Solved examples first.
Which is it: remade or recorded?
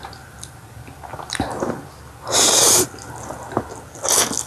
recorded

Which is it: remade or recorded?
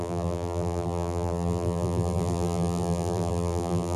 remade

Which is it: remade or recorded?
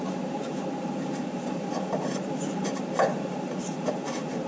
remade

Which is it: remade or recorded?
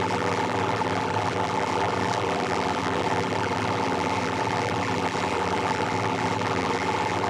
remade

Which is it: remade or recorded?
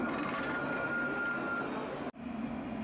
recorded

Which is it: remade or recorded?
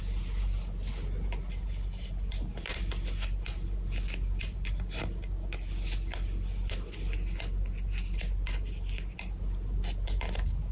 recorded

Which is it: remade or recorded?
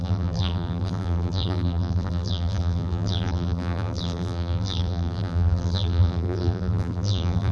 remade